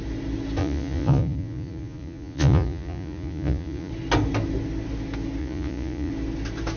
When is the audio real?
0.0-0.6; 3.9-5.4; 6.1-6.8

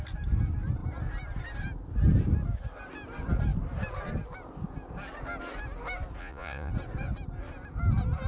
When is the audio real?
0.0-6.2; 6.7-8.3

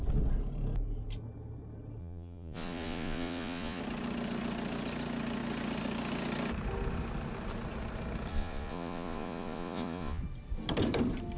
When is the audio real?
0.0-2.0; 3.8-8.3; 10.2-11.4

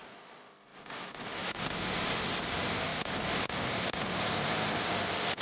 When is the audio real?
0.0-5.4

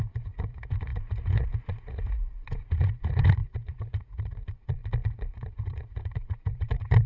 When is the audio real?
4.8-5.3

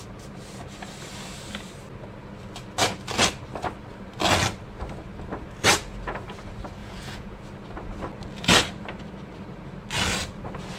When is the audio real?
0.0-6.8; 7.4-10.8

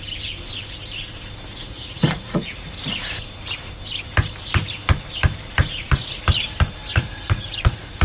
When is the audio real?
0.0-1.5; 2.7-5.7; 6.2-6.9

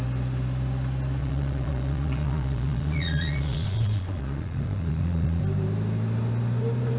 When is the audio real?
0.0-1.2; 5.4-7.0